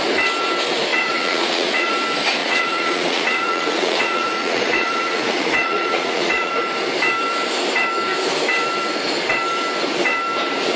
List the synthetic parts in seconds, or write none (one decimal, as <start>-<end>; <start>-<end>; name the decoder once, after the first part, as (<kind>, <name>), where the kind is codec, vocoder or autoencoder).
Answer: 0.9-1.9 (vocoder, Vocos); 2.4-6.5